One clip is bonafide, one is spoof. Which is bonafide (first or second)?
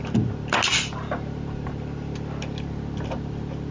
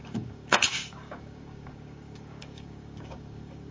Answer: first